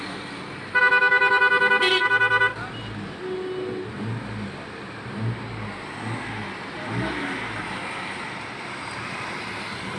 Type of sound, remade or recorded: recorded